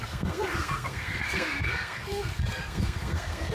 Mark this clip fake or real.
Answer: fake